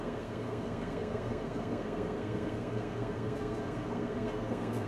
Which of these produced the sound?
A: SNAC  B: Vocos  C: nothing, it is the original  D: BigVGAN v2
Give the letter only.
A